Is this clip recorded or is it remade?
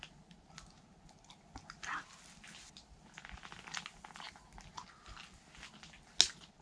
recorded